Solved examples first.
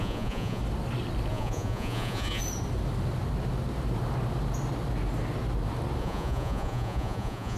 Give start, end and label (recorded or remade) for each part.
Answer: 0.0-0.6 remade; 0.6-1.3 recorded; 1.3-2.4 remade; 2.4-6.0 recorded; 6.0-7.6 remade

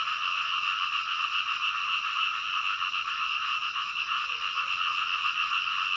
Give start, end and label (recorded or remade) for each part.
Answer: 0.0-3.1 recorded; 3.1-4.3 remade; 4.3-6.0 recorded

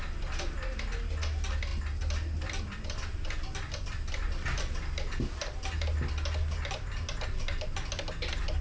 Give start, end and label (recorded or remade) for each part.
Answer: 0.0-8.6 recorded

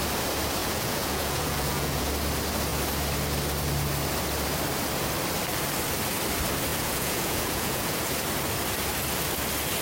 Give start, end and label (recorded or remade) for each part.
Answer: 0.0-0.6 recorded; 0.6-2.1 remade; 2.1-6.7 recorded; 6.7-8.0 remade; 8.0-9.8 recorded